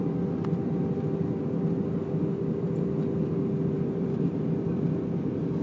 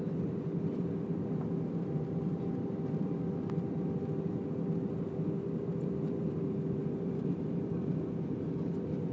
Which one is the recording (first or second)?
first